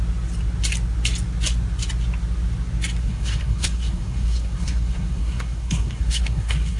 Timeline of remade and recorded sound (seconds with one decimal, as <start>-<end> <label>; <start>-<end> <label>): 0.0-3.0 recorded; 3.0-6.8 remade